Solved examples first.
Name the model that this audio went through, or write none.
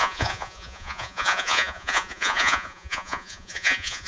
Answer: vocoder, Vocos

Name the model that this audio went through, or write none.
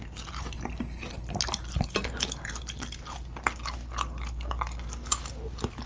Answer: none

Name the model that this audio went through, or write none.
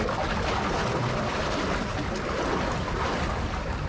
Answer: none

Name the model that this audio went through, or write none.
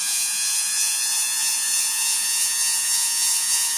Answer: vocoder, Vocos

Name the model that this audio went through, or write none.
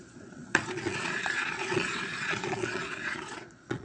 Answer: vocoder, Vocos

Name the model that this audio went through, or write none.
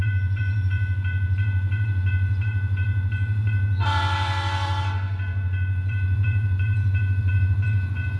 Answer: vocoder, Vocos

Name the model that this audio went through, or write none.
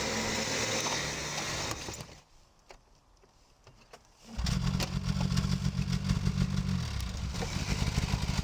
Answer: none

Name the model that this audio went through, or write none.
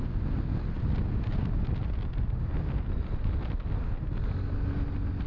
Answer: none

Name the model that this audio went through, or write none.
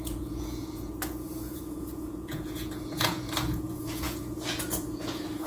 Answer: vocoder, Vocos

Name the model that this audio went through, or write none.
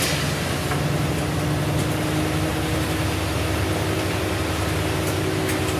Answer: none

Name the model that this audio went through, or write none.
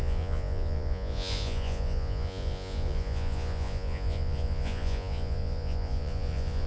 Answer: vocoder, Vocos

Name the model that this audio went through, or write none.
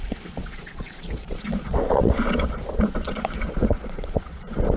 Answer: vocoder, Vocos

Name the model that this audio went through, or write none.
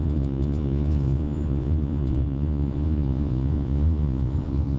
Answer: vocoder, Vocos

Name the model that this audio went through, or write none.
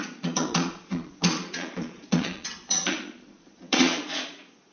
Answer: vocoder, Vocos